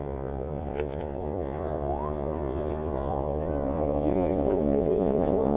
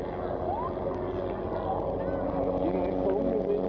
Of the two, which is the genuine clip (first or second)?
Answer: second